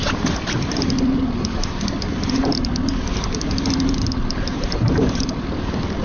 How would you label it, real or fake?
real